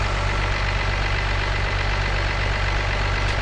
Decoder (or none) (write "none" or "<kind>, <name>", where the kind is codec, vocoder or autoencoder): none